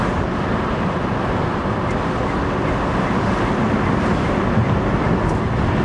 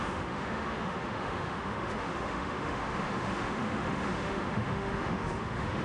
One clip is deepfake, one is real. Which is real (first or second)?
first